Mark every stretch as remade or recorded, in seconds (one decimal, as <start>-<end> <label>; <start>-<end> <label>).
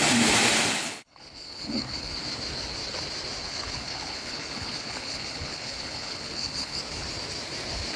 0.0-0.8 recorded; 0.8-2.2 remade; 2.2-3.4 recorded; 3.4-6.8 remade; 6.8-8.0 recorded